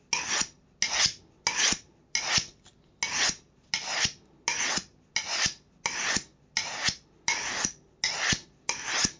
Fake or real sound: real